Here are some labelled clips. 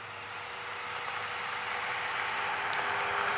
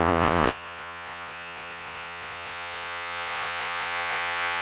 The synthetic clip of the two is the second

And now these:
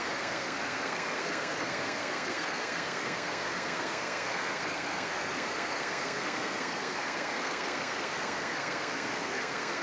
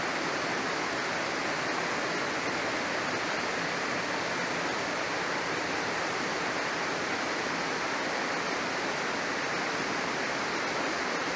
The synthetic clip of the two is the first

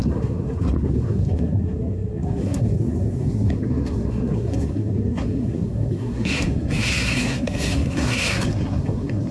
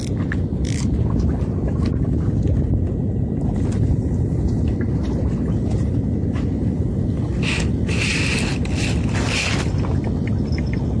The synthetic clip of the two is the first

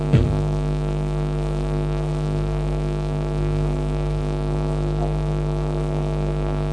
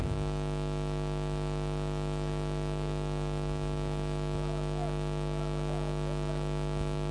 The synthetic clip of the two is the first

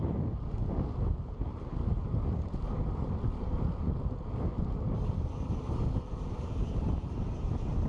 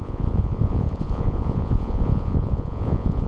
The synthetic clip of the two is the second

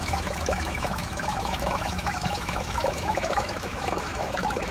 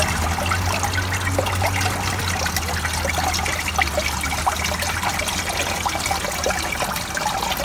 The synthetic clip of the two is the first